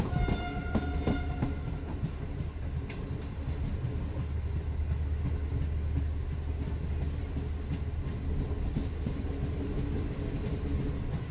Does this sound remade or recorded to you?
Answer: recorded